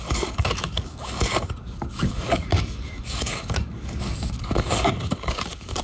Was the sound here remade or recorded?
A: remade